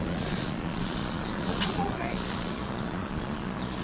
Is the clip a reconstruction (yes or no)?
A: yes